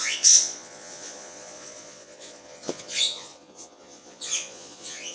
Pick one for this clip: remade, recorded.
remade